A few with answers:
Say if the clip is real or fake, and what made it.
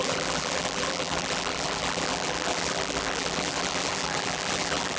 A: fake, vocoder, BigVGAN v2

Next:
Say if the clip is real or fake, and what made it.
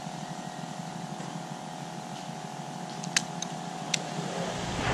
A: real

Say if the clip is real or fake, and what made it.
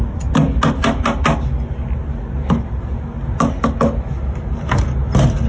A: real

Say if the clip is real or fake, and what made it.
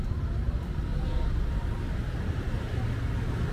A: real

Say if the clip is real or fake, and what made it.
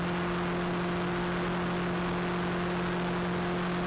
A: real